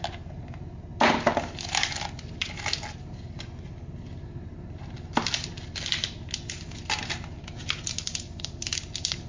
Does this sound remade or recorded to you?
recorded